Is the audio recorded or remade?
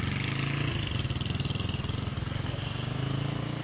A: recorded